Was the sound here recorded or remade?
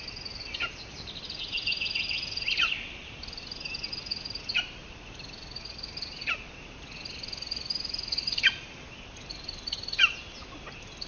recorded